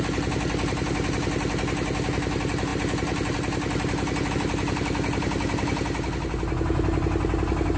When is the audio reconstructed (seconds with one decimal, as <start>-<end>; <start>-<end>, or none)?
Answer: none